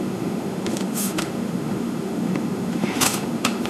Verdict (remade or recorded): remade